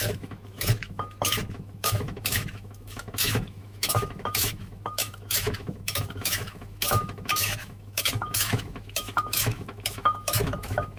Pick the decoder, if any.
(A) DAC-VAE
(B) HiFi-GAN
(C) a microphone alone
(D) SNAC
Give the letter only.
A